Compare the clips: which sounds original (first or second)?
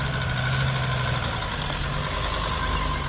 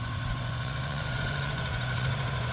first